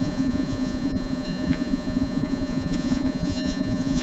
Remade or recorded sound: remade